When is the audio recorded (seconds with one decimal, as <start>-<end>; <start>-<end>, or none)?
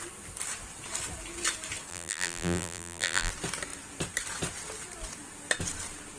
0.0-1.9; 3.3-6.2